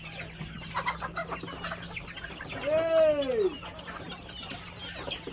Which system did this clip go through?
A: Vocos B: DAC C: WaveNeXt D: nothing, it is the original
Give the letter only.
D